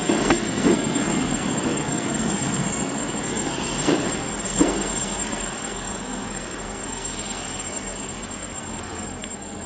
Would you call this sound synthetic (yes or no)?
yes